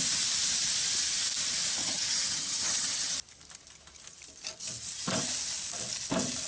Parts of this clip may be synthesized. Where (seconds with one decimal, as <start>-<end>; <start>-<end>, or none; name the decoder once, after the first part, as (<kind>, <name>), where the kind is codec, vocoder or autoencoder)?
1.8-3.1 (vocoder, HiFi-GAN)